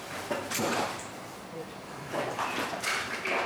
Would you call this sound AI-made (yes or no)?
yes